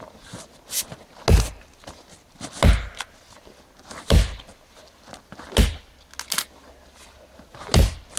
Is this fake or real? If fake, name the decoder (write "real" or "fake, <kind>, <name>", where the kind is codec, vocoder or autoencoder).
real